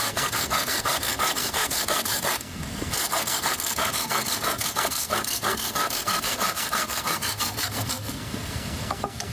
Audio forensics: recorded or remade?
remade